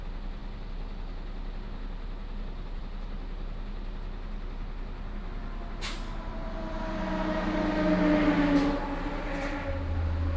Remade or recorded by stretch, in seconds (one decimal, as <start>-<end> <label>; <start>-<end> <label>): 0.0-10.4 recorded